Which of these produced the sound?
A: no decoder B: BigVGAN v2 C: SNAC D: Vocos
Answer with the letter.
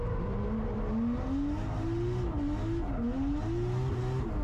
A